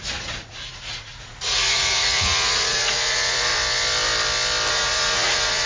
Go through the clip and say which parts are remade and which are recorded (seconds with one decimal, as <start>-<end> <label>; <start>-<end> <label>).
0.0-3.5 remade; 3.5-4.7 recorded; 4.7-5.7 remade